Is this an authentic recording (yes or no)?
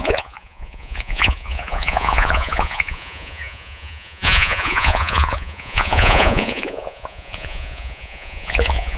no